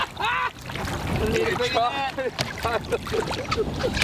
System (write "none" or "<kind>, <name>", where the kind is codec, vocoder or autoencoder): none